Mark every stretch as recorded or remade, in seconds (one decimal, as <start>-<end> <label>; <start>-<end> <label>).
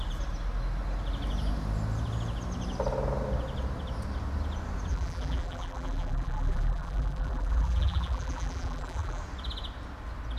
0.0-4.9 recorded; 4.9-9.2 remade; 9.2-10.4 recorded